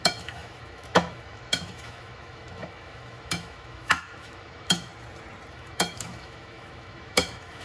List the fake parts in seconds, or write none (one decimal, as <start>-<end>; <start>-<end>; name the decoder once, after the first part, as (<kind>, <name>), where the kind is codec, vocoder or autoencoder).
0.0-4.9 (autoencoder, DAC-VAE); 5.5-7.6

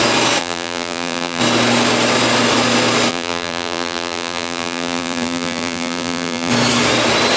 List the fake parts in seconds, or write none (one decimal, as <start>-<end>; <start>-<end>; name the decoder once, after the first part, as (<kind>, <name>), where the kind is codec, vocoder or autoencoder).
0.4-1.4 (vocoder, BigVGAN v2); 3.1-6.5